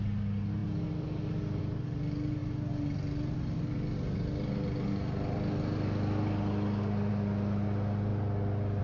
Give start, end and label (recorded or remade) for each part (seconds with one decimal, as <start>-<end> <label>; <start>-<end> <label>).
0.0-8.8 recorded